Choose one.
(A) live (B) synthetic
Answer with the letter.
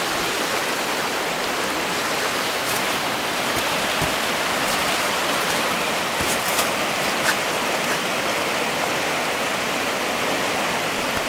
B